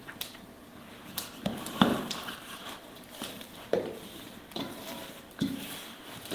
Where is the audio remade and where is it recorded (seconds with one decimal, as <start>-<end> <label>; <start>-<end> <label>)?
0.0-6.3 remade